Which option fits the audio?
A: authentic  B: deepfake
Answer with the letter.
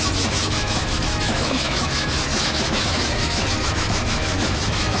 B